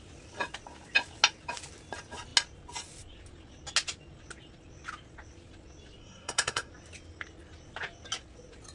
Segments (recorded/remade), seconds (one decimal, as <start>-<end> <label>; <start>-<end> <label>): 0.0-6.0 recorded; 6.0-6.7 remade; 6.7-8.7 recorded

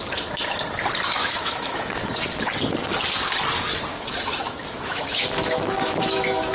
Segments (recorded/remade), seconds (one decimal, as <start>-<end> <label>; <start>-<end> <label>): 0.0-1.2 recorded; 1.2-1.9 remade; 1.9-3.9 recorded; 3.9-6.5 remade